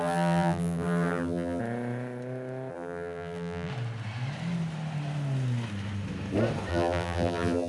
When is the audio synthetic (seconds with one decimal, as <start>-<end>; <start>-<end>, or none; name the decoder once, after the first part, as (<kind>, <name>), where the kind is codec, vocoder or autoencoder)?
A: 0.0-1.6 (vocoder, BigVGAN v2); 2.7-3.7; 6.7-7.7